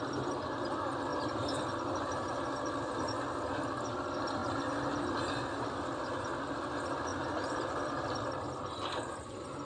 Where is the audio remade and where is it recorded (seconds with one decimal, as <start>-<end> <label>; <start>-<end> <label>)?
0.0-9.6 recorded